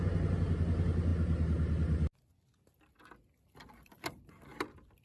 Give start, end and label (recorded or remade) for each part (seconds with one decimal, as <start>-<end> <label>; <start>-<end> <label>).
0.0-5.0 recorded